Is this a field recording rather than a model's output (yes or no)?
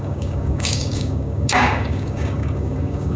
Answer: no